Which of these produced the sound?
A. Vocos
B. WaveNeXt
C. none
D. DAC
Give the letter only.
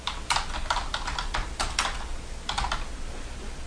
C